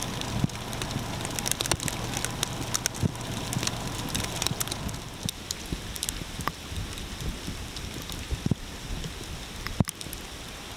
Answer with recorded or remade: recorded